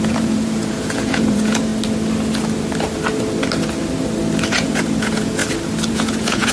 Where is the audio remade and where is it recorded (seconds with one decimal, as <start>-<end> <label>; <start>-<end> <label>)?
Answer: 0.0-1.7 remade; 1.7-4.5 recorded; 4.5-5.4 remade; 5.4-5.9 recorded; 5.9-6.5 remade